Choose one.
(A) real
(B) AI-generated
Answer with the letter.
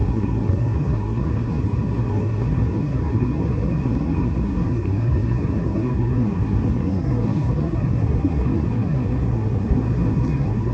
B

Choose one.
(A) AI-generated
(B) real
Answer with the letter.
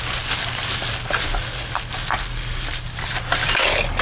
B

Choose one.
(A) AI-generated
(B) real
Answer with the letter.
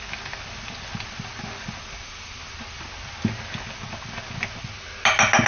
B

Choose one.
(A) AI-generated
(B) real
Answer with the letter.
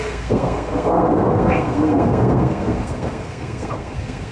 A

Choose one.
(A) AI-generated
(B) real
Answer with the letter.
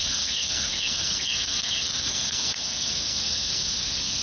A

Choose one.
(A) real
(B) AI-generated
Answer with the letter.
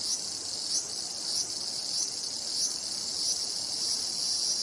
A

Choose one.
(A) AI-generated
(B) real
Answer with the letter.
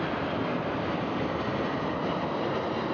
B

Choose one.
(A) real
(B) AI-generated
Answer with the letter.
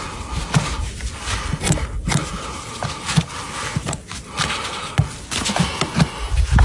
A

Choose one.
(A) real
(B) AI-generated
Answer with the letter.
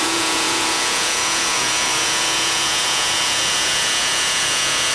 B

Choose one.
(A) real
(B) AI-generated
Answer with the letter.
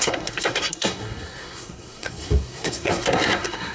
B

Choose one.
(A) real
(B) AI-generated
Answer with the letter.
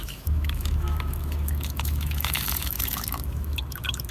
B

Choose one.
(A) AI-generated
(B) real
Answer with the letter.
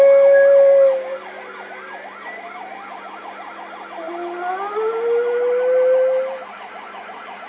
B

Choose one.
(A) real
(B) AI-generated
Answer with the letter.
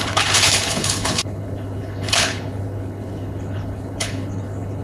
B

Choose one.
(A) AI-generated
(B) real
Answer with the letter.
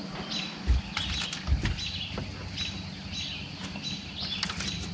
B